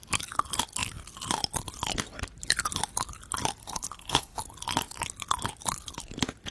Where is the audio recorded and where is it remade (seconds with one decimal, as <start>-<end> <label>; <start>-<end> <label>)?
0.0-3.6 recorded; 3.6-4.4 remade; 4.4-6.5 recorded